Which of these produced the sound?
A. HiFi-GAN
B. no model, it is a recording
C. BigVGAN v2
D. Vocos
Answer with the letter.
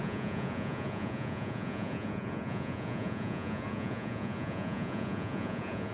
D